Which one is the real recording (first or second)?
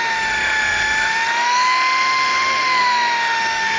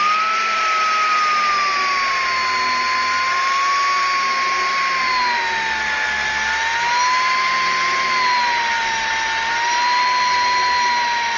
second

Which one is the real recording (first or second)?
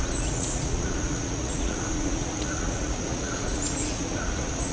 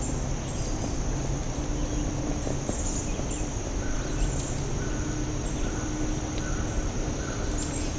second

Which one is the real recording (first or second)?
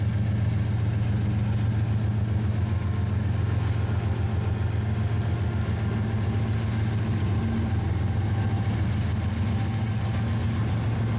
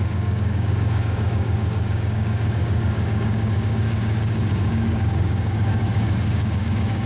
first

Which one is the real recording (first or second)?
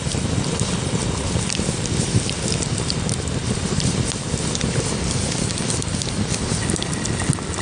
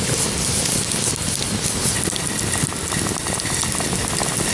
second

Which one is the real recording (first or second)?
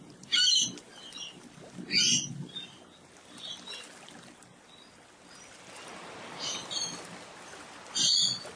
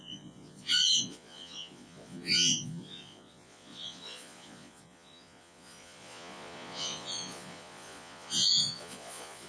first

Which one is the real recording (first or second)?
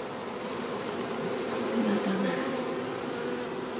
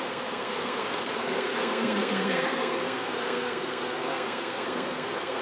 first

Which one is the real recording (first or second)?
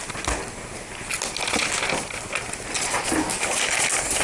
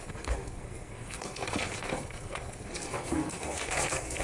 first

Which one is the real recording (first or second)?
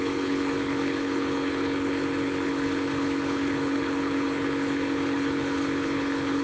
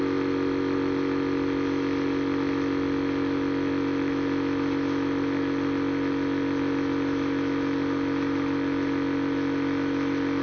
second